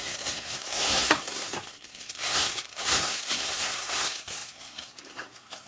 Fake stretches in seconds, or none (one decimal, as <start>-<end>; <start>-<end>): 0.0-5.7